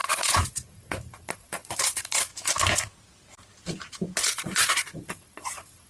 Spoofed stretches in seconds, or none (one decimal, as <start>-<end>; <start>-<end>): 0.0-2.3; 4.2-5.9